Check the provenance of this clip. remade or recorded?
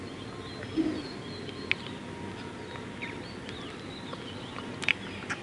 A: recorded